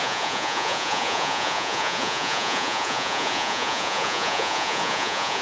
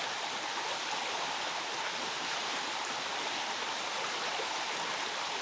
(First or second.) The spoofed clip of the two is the first